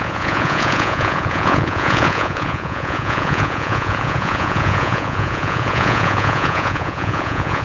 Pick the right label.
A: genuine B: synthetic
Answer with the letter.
B